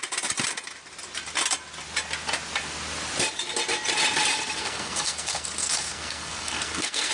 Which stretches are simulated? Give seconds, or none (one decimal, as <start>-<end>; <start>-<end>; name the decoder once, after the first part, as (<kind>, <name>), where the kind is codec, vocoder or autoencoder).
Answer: 4.6-7.1 (codec, SNAC)